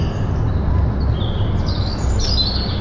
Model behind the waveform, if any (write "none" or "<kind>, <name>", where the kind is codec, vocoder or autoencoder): none